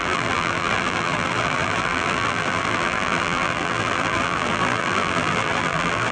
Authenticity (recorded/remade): remade